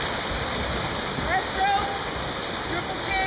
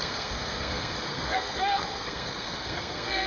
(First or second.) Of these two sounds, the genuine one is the first